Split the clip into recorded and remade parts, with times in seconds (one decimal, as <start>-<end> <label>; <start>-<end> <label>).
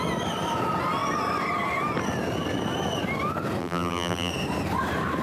0.0-3.6 recorded; 3.6-4.3 remade; 4.3-5.2 recorded